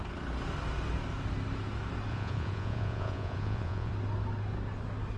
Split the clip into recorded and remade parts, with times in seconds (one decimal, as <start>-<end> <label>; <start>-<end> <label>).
0.0-2.1 recorded; 2.1-3.9 remade; 3.9-5.2 recorded